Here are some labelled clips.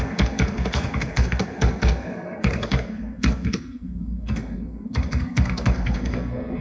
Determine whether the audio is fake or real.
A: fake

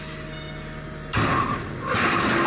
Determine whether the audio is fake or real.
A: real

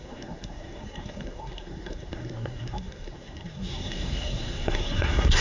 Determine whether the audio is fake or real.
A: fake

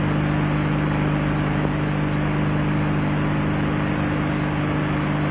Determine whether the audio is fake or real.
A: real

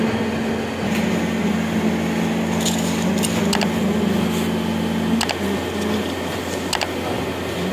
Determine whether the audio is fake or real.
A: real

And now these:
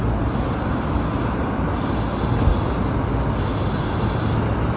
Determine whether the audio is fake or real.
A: real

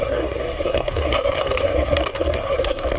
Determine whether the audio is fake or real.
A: fake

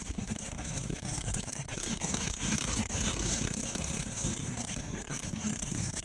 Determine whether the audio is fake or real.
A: fake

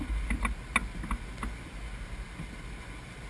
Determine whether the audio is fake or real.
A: real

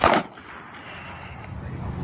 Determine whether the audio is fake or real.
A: real